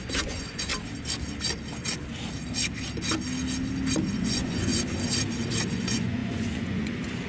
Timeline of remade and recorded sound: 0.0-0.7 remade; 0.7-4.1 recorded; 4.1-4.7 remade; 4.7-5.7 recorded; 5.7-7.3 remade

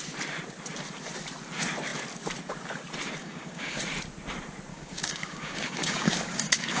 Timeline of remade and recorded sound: 0.0-3.2 recorded; 3.2-3.8 remade; 3.8-4.7 recorded; 4.7-6.8 remade

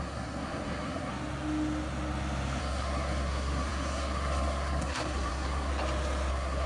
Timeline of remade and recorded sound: 0.0-1.1 remade; 1.1-2.6 recorded; 2.6-5.7 remade; 5.7-6.3 recorded; 6.3-6.7 remade

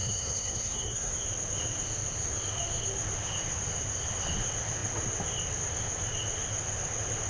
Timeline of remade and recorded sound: 0.0-1.1 remade; 1.1-7.3 recorded

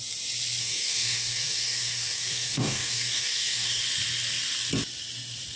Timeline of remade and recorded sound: 0.0-0.6 recorded; 0.6-3.8 remade; 3.8-5.6 recorded

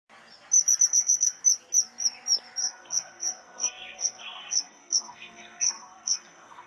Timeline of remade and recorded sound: 0.0-0.9 recorded; 0.9-1.4 remade; 1.4-2.6 recorded; 2.6-6.7 remade

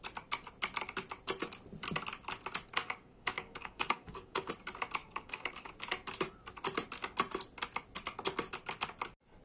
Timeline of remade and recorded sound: 0.0-2.8 recorded; 2.8-4.5 remade; 4.5-5.0 recorded; 5.0-5.7 remade; 5.7-9.4 recorded